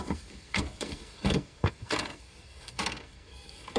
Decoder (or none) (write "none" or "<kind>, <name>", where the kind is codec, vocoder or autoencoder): codec, SNAC